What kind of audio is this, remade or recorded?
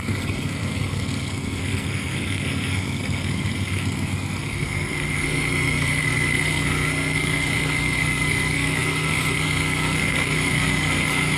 remade